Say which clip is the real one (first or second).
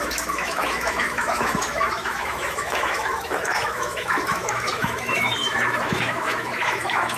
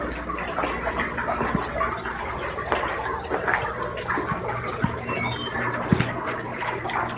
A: second